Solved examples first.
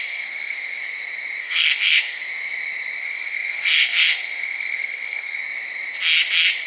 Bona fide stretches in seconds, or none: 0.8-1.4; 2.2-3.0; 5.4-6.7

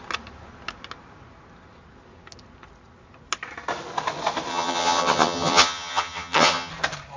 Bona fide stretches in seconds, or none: 0.0-4.5; 6.7-7.2

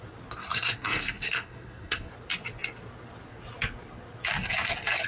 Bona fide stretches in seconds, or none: 0.0-0.4; 2.1-5.1

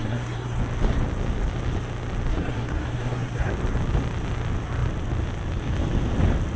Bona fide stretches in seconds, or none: 0.6-2.3; 3.5-6.6